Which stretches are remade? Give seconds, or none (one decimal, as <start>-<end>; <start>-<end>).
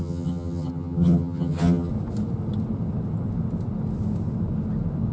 0.0-1.9